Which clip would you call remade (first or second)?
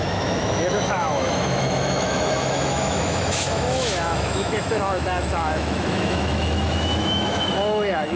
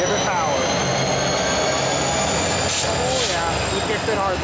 first